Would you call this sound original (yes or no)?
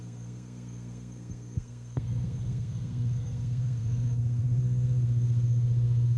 no